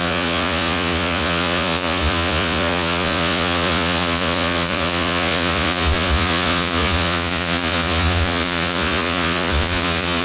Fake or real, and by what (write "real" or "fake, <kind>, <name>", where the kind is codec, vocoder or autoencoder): fake, vocoder, Vocos